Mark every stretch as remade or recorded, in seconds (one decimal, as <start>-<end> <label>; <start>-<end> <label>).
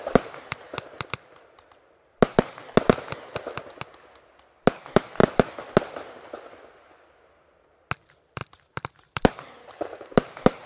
0.0-10.7 recorded